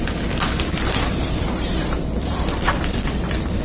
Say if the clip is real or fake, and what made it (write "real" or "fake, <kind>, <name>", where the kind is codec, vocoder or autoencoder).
fake, vocoder, BigVGAN v2